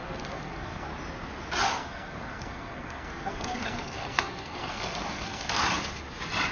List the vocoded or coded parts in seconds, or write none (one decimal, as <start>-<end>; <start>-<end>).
0.0-0.9; 1.7-5.6

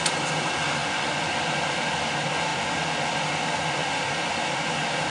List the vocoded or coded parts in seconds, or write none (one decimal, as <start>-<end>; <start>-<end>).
0.8-1.4

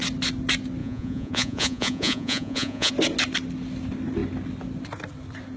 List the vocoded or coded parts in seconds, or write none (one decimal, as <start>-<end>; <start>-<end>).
0.8-2.9

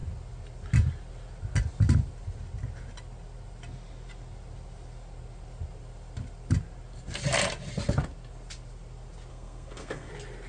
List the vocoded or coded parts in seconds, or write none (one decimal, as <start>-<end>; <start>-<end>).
9.3-10.1

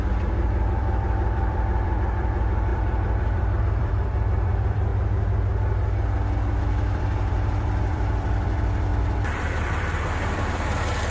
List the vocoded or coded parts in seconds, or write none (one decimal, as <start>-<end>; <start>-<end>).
0.0-4.9; 6.6-11.1

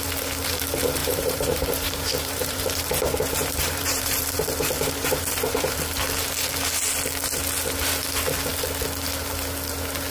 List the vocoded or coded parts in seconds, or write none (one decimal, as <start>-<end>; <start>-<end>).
1.0-5.8

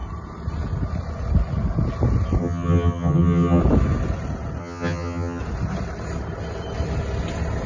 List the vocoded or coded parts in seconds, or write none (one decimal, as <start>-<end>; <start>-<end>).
2.4-3.6; 4.6-5.4